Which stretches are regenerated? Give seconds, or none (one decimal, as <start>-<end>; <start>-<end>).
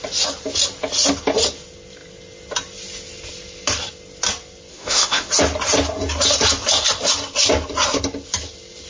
4.7-5.3